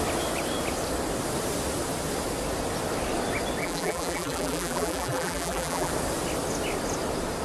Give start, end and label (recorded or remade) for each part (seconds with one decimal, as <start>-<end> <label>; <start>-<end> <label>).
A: 0.0-3.6 recorded; 3.6-5.9 remade; 5.9-7.4 recorded